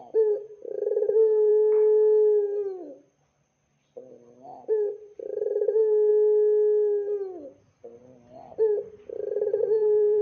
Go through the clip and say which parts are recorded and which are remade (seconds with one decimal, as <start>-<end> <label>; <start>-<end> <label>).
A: 0.0-8.0 recorded; 8.0-10.2 remade